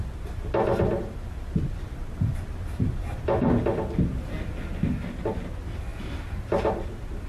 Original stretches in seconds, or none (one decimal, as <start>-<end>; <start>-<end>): 0.0-2.0; 3.6-5.9